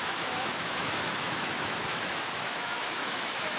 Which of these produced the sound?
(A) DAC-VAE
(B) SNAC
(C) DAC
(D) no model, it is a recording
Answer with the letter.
A